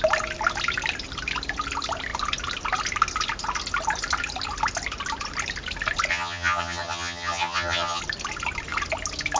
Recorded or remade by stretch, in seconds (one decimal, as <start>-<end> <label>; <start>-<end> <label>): 0.0-6.1 recorded; 6.1-8.0 remade; 8.0-9.4 recorded